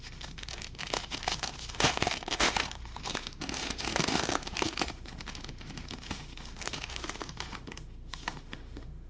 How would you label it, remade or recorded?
remade